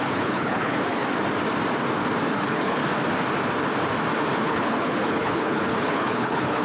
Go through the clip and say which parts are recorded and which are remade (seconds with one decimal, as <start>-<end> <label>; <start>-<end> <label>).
0.0-1.0 remade; 1.0-2.3 recorded; 2.3-2.8 remade; 2.8-4.4 recorded; 4.4-6.6 remade